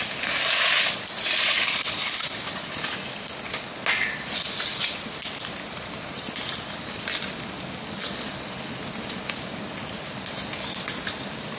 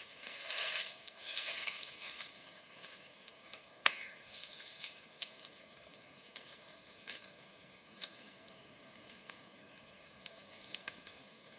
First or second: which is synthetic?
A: second